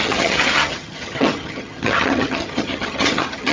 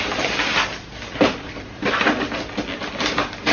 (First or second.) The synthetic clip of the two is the first